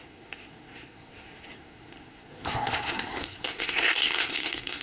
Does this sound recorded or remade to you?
remade